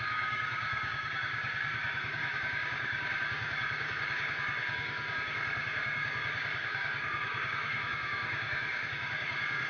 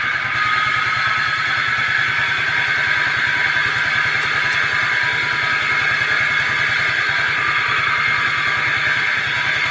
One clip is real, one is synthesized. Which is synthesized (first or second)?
first